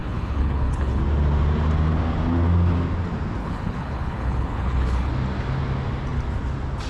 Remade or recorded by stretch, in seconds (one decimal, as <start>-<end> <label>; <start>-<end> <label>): 0.0-1.0 remade; 1.0-3.4 recorded; 3.4-5.1 remade; 5.1-6.9 recorded